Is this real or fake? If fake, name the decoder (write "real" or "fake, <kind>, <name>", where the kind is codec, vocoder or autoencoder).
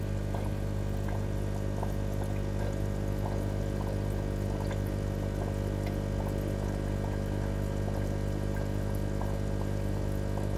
real